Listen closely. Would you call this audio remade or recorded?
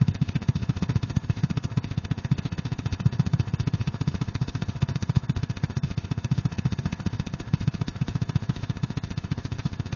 remade